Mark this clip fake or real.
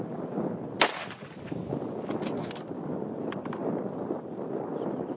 real